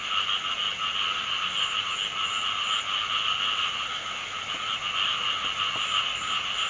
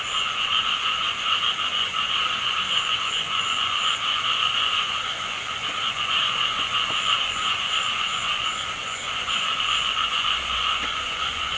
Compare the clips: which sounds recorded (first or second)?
first